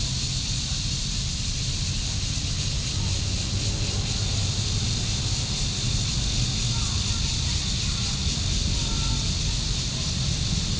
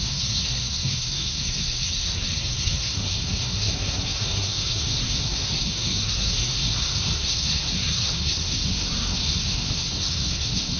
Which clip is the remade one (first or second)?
second